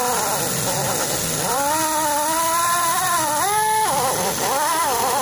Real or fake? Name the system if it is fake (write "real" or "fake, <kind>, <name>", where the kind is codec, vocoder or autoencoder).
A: real